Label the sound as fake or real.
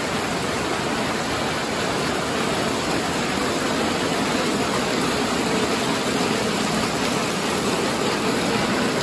real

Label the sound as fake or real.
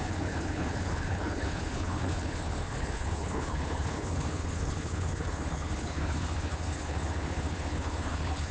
fake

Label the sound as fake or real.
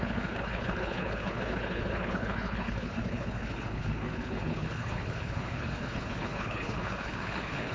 fake